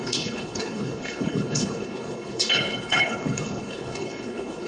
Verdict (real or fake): fake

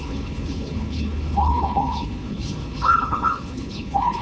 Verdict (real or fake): fake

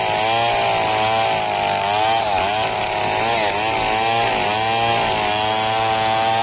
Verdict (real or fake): real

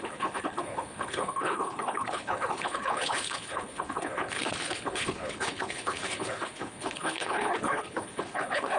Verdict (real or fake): fake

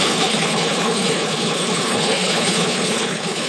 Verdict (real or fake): fake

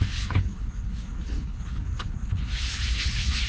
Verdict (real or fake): fake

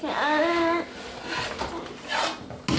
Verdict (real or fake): real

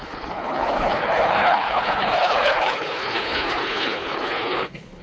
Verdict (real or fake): fake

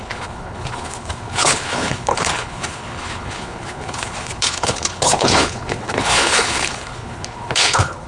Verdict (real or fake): fake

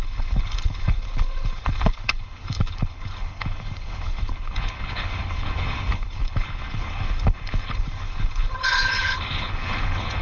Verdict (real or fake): fake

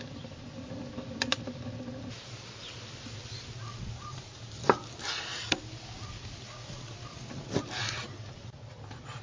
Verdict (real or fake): real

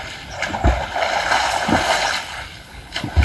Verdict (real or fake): real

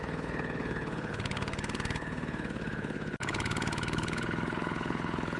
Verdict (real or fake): fake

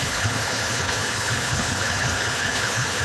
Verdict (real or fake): fake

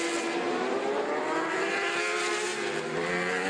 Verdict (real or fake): real